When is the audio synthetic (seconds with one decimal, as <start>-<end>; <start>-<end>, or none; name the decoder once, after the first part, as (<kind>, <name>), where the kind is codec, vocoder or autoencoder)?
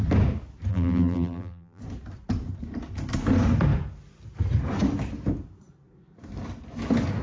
0.7-1.8 (vocoder, BigVGAN v2)